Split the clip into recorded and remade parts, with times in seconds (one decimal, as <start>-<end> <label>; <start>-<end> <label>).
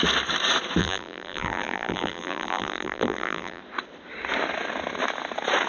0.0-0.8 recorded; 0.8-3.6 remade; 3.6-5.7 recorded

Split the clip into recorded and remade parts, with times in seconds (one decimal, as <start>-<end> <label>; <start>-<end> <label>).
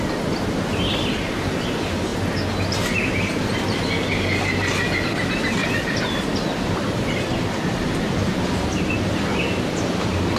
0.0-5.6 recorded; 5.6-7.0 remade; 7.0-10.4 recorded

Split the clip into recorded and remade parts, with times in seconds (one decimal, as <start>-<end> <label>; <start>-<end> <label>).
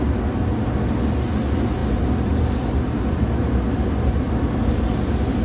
0.0-1.8 recorded; 1.8-4.5 remade; 4.5-5.4 recorded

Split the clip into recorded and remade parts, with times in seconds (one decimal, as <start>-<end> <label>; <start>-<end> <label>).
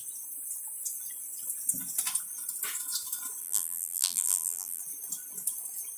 0.0-3.4 recorded; 3.4-4.8 remade; 4.8-6.0 recorded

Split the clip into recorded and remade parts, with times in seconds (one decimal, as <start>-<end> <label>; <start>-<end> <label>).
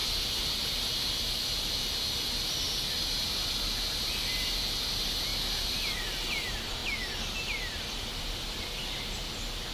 0.0-9.7 recorded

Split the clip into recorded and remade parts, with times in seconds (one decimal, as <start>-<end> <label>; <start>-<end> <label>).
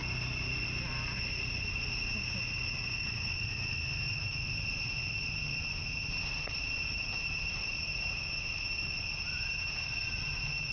0.0-3.6 recorded; 3.6-10.7 remade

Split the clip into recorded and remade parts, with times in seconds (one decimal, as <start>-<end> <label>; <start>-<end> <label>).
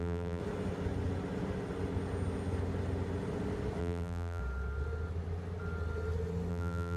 0.0-0.4 remade; 0.4-3.8 recorded; 3.8-4.4 remade; 4.4-6.5 recorded; 6.5-7.0 remade